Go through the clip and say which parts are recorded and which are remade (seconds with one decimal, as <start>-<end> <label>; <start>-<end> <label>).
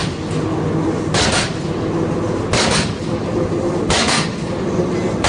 0.0-5.3 recorded